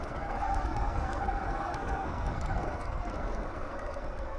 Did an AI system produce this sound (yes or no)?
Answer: yes